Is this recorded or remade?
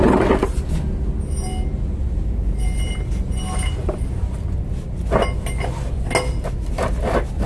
recorded